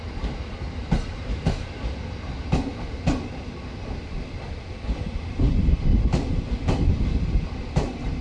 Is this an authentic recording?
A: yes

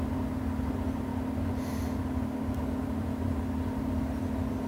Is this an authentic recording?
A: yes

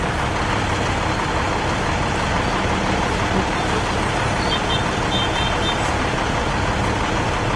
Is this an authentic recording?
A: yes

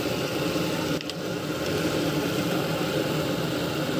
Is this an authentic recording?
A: yes